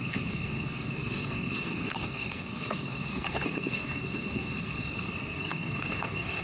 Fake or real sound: fake